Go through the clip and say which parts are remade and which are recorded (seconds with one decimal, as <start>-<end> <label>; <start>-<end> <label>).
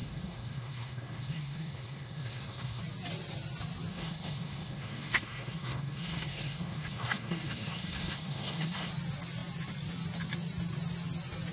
0.0-2.8 remade; 2.8-3.9 recorded; 3.9-8.9 remade; 8.9-11.5 recorded